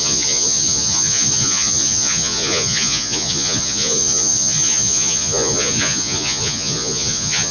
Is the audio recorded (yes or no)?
no